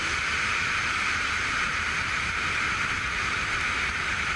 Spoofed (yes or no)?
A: no